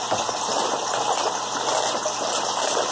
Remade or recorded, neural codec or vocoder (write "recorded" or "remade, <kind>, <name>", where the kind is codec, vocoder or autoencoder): recorded